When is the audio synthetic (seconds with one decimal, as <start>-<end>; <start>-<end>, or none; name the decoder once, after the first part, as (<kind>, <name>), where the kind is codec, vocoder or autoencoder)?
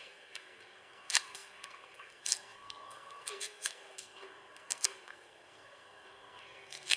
0.0-7.0 (codec, SNAC)